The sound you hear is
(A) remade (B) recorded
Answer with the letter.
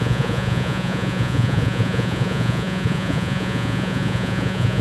A